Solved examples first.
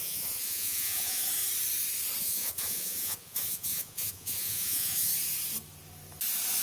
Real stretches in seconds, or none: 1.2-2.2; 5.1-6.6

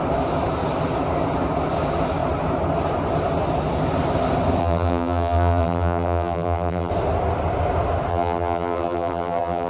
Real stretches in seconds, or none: 0.0-4.6; 6.9-8.1

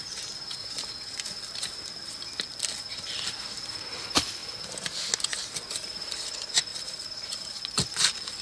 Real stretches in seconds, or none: 0.0-6.7; 7.5-8.4

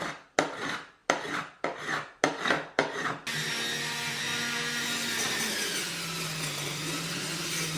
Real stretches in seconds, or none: 0.0-7.8

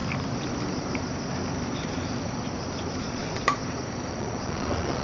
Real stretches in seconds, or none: 0.0-3.0; 3.6-4.1

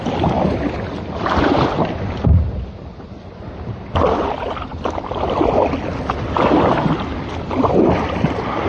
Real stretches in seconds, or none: 0.0-8.7

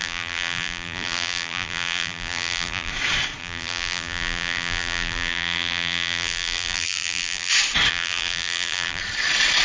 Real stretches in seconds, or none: 2.9-3.4; 7.5-7.9; 9.0-9.6